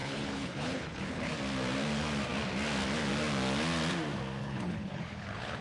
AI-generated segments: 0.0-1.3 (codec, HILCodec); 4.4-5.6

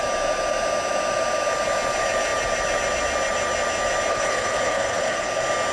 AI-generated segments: 4.1-5.3 (codec, HILCodec)

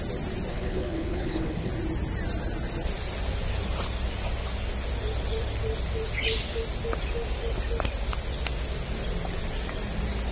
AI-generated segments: 0.5-1.7 (codec, HILCodec)

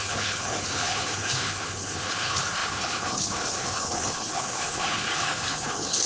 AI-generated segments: 0.0-6.1 (codec, HILCodec)

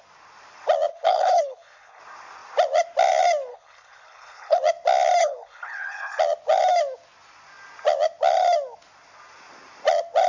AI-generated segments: 0.9-2.0 (codec, HILCodec); 3.5-4.6; 5.2-6.2

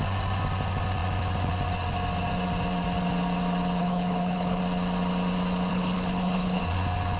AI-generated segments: 3.8-4.6 (codec, HILCodec); 5.7-6.6

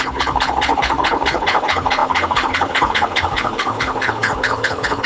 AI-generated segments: 0.0-5.1 (codec, HILCodec)